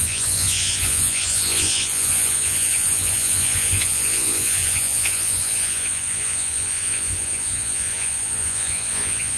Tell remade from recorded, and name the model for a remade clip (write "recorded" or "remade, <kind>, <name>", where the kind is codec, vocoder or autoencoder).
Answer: remade, vocoder, Vocos